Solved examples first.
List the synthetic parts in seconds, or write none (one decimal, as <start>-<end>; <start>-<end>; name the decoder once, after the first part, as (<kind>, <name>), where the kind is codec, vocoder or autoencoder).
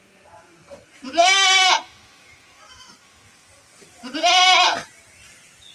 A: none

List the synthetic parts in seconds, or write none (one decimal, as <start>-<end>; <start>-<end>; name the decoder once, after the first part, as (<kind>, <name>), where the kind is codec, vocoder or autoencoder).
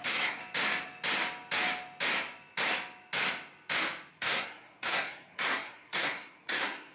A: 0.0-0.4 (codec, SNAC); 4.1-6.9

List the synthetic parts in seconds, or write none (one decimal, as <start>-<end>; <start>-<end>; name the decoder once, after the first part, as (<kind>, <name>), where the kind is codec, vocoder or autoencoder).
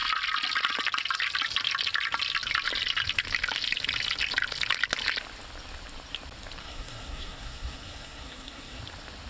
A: 6.6-8.8 (codec, SNAC)